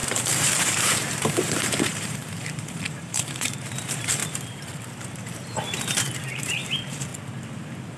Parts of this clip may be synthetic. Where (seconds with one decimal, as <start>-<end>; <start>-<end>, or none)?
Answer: 0.5-4.2; 4.9-7.1